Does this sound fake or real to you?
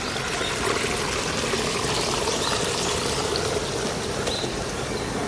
real